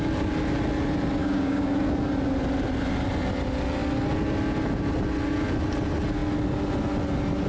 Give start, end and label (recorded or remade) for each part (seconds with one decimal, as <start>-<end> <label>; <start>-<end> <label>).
0.0-1.2 recorded; 1.2-1.7 remade; 1.7-7.5 recorded